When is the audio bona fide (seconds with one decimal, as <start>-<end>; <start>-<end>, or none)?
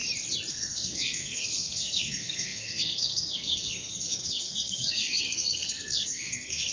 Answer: 0.0-0.5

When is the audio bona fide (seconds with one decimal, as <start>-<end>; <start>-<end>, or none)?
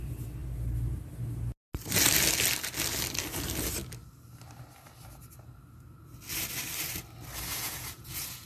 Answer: 0.0-7.5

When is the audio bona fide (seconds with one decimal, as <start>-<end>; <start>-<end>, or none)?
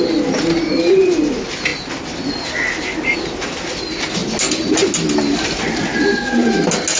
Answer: 0.0-7.0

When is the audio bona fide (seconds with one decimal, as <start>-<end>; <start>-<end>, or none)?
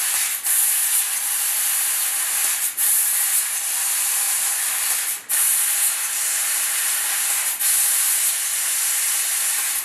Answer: 0.0-9.8